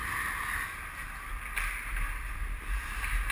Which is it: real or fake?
real